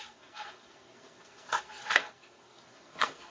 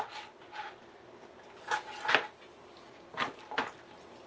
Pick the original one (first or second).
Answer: second